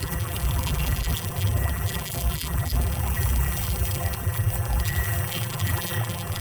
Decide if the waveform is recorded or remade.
remade